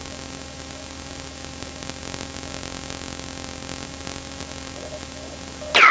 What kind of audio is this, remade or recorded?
recorded